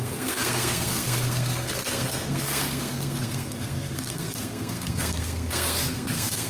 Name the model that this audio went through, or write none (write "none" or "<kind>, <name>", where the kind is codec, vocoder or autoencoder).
codec, SNAC